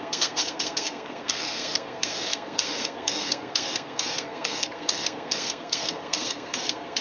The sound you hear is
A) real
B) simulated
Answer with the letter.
B